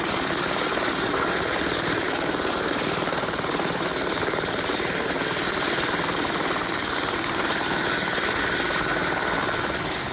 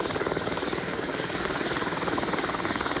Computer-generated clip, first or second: second